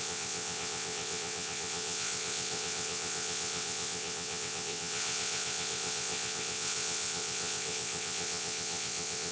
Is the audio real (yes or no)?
no